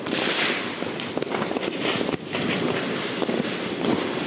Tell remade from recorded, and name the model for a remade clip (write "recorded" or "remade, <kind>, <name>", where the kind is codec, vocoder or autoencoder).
recorded